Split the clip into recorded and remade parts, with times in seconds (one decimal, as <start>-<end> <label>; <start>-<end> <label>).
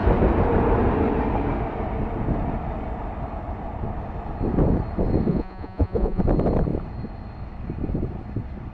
0.0-5.3 recorded; 5.3-6.2 remade; 6.2-8.7 recorded